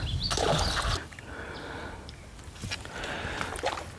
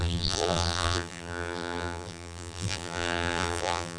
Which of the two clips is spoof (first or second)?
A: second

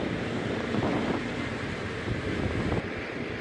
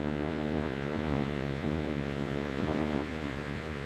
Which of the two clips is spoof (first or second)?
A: second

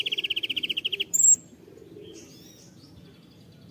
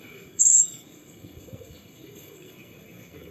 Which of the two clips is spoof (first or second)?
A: second